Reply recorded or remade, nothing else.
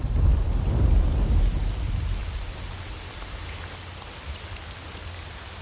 recorded